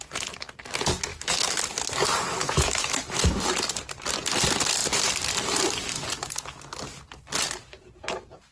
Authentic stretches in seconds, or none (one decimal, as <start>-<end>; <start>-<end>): 0.0-1.1; 1.6-2.3; 3.4-8.5